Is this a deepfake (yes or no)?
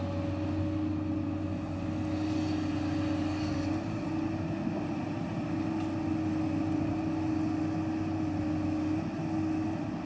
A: no